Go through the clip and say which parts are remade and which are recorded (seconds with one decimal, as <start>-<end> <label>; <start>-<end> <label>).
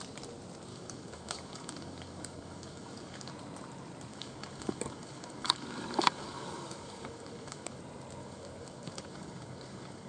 0.0-0.7 recorded; 0.7-3.3 remade; 3.3-4.1 recorded; 4.1-7.8 remade; 7.8-8.2 recorded; 8.2-10.1 remade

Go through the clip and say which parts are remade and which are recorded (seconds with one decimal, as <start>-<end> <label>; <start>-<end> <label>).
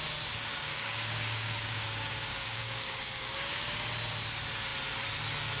0.0-0.5 recorded; 0.5-3.9 remade; 3.9-5.6 recorded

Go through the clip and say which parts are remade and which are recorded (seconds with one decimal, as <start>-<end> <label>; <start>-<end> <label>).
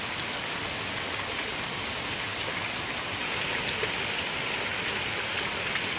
0.0-6.0 recorded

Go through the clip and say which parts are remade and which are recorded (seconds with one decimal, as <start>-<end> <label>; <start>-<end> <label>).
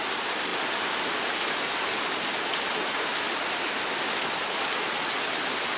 0.0-5.8 recorded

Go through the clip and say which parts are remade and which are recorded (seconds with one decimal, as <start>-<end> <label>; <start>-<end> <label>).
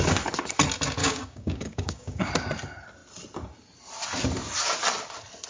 0.0-1.0 recorded; 1.0-2.3 remade; 2.3-5.5 recorded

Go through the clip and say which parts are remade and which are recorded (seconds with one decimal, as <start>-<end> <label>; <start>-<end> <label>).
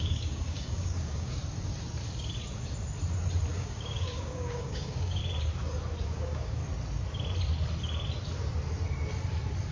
0.0-1.4 remade; 1.4-3.5 recorded; 3.5-5.2 remade; 5.2-6.0 recorded; 6.0-6.6 remade; 6.6-9.7 recorded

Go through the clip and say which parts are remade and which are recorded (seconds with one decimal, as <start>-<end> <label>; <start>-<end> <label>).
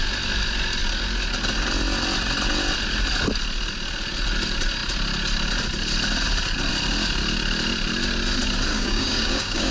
0.0-8.7 recorded; 8.7-9.7 remade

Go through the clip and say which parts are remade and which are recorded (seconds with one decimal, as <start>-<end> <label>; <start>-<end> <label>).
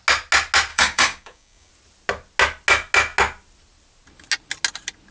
0.0-0.7 recorded; 0.7-1.7 remade; 1.7-5.1 recorded